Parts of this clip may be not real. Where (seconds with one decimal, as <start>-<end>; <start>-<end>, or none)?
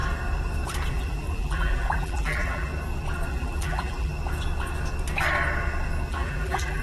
0.9-2.7; 3.3-4.1; 6.1-6.8